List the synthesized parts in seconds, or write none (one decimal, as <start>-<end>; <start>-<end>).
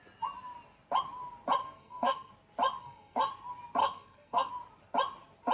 1.6-2.3; 2.8-3.3; 3.8-4.5